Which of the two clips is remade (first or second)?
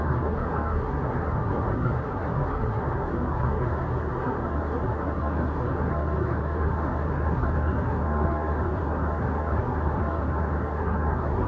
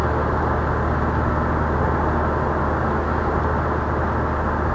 first